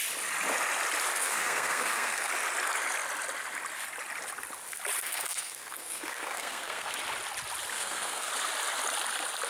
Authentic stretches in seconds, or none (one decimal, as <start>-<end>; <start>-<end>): 0.0-1.1; 2.3-5.0; 6.9-7.7; 8.3-9.5